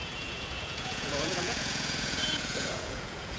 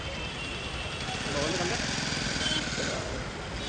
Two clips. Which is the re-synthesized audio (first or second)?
first